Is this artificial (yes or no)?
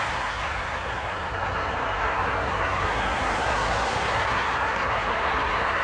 yes